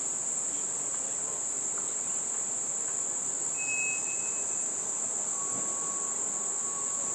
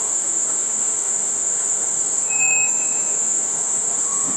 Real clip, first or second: first